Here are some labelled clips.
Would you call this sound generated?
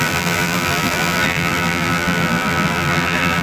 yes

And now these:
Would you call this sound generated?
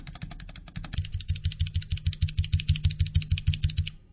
no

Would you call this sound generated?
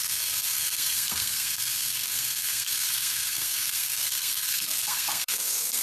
yes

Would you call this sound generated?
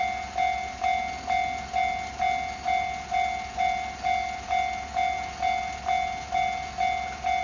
no